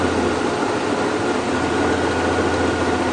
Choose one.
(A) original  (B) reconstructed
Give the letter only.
A